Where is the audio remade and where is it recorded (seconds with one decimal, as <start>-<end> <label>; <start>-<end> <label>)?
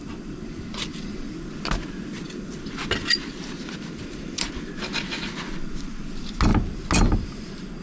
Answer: 0.0-7.8 recorded